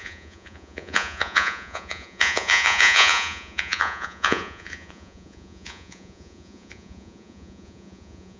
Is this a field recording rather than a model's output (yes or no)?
no